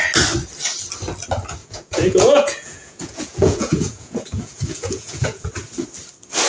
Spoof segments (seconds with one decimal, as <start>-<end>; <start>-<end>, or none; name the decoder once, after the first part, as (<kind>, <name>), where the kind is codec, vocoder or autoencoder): 1.6-5.5 (vocoder, Vocos)